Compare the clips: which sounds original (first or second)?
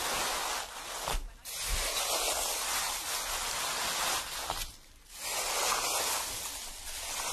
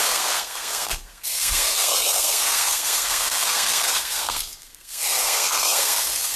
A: first